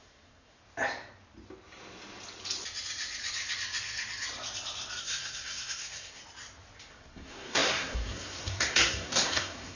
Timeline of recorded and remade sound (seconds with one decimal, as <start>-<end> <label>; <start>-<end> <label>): 0.0-0.6 remade; 0.6-5.0 recorded; 5.0-6.2 remade; 6.2-6.9 recorded; 6.9-9.8 remade